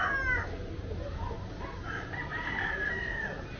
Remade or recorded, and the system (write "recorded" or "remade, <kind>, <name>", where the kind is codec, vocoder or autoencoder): recorded